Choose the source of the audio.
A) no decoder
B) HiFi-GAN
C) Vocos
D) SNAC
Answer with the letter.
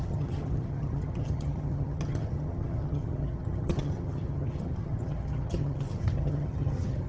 B